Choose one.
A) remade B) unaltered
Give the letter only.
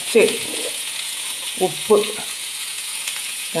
A